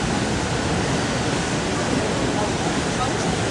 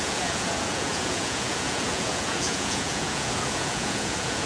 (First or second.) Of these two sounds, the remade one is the second